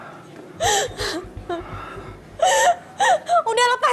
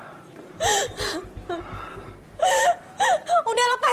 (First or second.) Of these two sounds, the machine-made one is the second